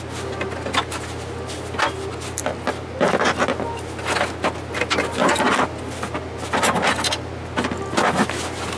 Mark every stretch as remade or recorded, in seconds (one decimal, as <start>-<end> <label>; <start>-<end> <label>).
0.0-8.8 recorded